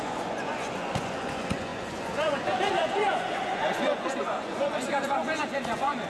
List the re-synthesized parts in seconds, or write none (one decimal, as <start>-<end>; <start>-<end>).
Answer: 0.0-6.1